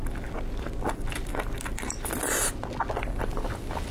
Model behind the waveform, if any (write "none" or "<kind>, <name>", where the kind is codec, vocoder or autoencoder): none